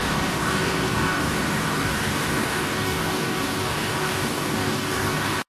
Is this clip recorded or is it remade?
remade